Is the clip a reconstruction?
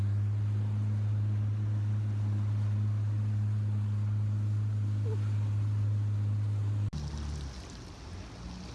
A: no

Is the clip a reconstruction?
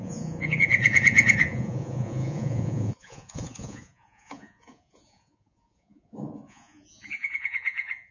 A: yes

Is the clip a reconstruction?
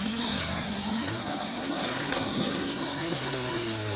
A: yes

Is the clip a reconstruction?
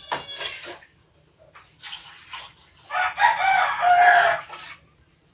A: no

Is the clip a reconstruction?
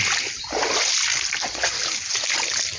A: no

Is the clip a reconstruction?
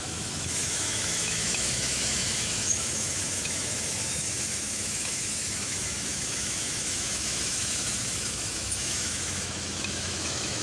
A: yes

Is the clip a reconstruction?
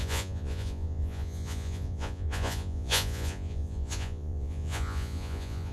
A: yes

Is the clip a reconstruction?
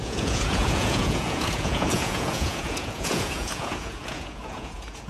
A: yes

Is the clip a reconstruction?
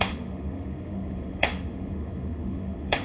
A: yes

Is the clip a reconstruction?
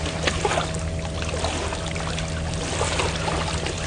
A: no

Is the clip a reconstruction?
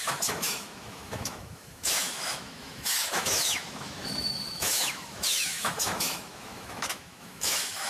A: yes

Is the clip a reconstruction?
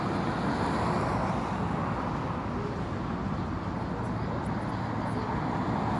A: no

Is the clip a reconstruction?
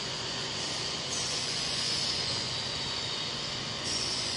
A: yes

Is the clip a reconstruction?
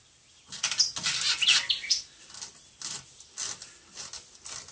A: no